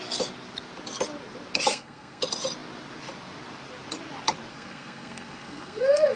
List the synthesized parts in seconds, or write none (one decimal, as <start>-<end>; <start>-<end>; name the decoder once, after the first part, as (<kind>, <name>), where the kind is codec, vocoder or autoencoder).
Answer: 1.7-2.2 (codec, SNAC); 4.5-6.2